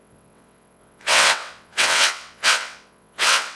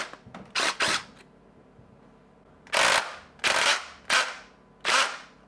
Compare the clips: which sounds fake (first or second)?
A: first